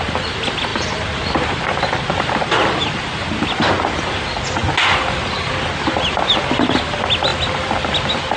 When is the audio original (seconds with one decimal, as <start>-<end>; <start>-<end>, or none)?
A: 0.0-0.7; 1.6-8.4